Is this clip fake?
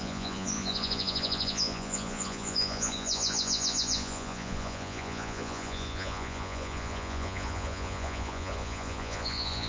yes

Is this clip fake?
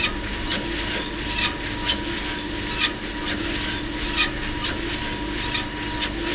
no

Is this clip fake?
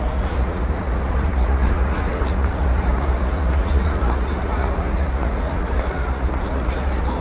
yes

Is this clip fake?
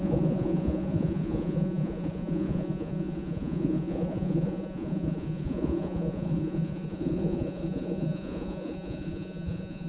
yes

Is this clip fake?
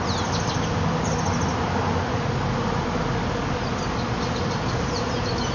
no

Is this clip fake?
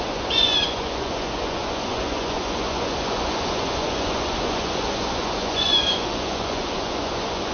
yes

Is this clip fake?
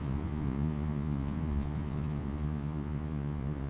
yes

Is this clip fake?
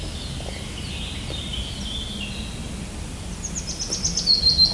no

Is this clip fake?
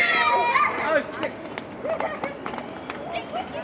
no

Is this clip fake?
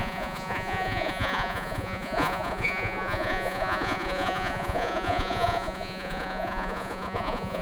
yes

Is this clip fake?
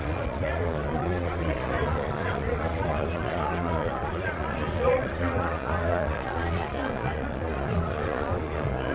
yes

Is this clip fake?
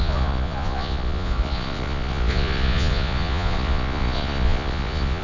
yes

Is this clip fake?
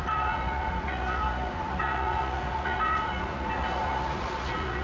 yes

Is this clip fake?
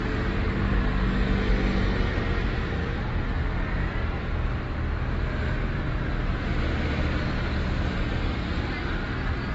no